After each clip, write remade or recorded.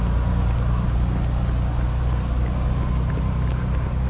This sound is recorded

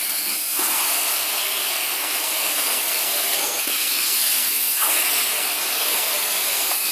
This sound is remade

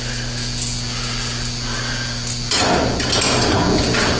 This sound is recorded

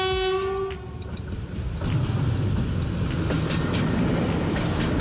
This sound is recorded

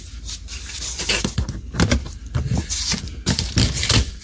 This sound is recorded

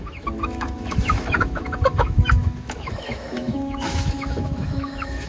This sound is remade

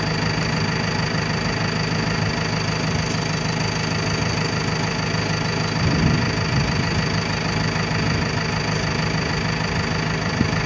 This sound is recorded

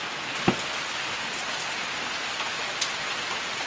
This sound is recorded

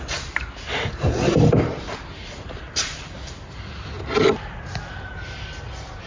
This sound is recorded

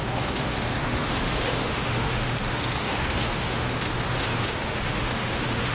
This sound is remade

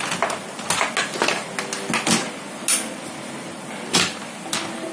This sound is recorded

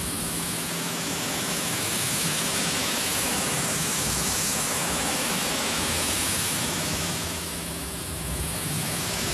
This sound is remade